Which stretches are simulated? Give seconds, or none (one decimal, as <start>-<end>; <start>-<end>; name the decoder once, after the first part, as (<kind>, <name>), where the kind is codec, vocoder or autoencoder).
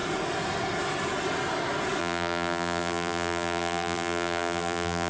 2.0-5.1 (vocoder, BigVGAN v2)